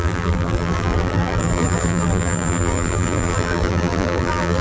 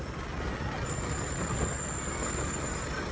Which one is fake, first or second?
first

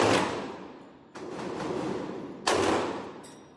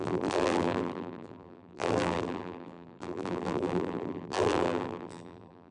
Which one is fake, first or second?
second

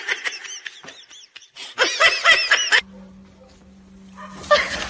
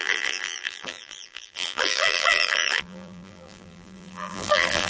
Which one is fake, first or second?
second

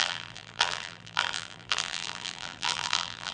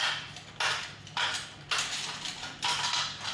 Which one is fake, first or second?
first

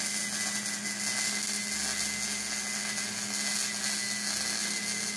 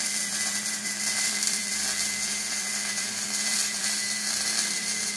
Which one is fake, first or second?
second